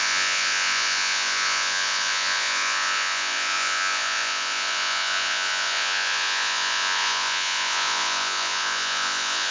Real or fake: fake